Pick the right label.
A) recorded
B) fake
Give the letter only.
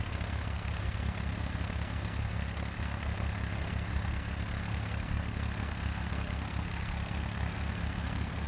B